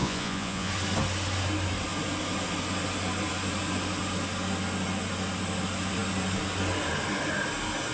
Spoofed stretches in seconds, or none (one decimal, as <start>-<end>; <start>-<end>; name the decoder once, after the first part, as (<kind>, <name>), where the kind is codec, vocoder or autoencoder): 0.0-0.7 (vocoder, Vocos)